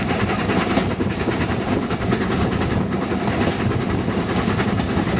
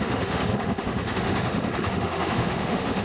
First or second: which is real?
first